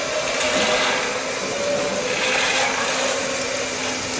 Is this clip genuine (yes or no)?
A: yes